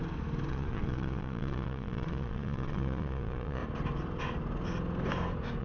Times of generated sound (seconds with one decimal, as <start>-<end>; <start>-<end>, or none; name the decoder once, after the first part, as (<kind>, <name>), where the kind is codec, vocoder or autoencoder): 0.5-3.6 (vocoder, Vocos)